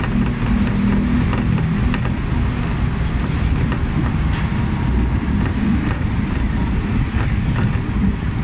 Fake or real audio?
real